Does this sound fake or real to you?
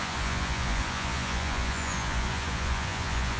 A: fake